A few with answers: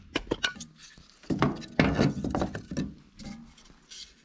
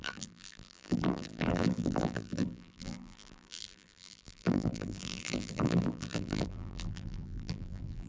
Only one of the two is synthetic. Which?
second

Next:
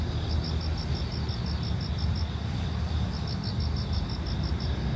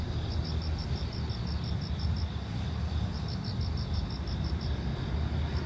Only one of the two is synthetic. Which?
second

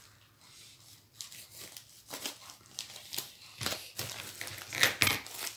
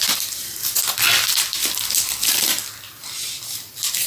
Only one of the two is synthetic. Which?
second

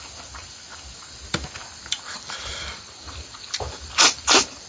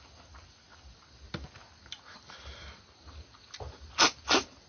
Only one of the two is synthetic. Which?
first